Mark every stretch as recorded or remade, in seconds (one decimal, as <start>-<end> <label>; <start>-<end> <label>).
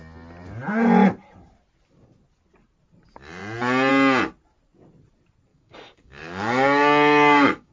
0.0-5.5 recorded; 5.5-7.7 remade